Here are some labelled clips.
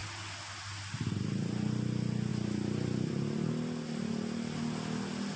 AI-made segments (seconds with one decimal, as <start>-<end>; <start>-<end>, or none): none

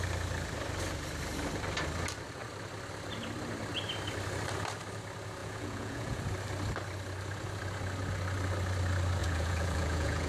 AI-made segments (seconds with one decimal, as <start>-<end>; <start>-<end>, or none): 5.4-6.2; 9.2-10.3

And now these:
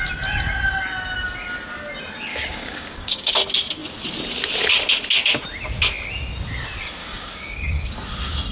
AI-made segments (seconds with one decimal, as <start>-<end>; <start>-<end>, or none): 2.3-3.3; 7.0-7.9

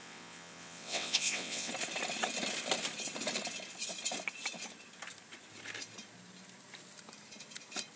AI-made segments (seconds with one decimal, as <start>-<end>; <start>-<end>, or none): 0.0-1.7

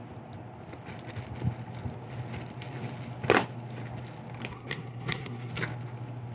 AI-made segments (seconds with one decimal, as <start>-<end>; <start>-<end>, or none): 4.5-5.5

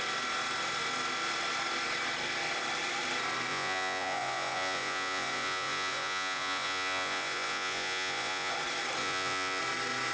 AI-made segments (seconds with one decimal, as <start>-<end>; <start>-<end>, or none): 3.5-8.5; 9.0-9.6

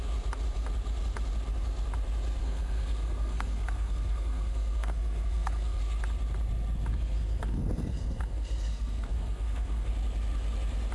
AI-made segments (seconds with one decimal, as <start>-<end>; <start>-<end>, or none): 2.4-5.8; 6.9-9.9

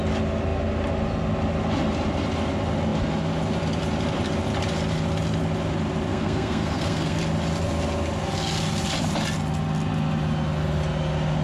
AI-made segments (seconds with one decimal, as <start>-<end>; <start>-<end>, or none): 6.1-7.2